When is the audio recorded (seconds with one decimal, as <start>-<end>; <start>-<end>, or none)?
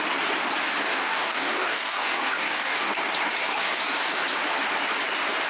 0.0-0.9; 3.0-3.5; 4.1-5.5